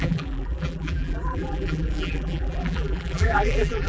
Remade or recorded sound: remade